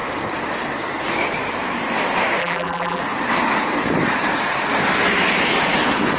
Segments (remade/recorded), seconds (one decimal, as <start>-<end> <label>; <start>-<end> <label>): 0.0-2.4 recorded; 2.4-3.0 remade; 3.0-6.2 recorded